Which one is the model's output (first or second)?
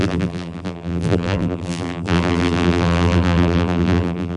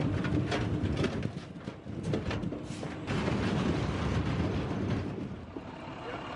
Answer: first